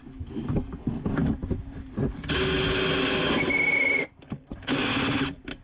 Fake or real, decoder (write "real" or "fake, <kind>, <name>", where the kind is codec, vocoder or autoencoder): real